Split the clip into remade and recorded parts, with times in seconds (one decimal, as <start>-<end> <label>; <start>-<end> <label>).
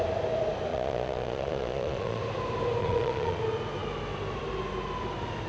0.0-0.7 recorded; 0.7-2.2 remade; 2.2-2.8 recorded; 2.8-3.4 remade; 3.4-5.5 recorded